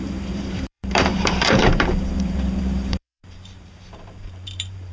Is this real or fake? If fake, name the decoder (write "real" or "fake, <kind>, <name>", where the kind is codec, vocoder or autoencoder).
fake, vocoder, BigVGAN v2